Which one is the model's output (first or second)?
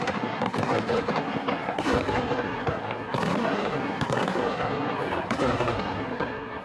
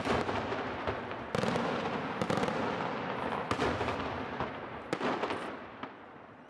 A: first